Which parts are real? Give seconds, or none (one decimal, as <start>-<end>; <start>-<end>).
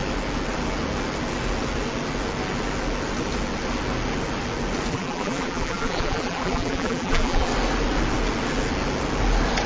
0.0-4.9; 7.5-9.7